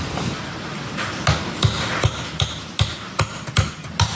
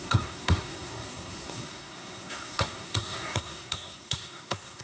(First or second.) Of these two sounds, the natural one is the first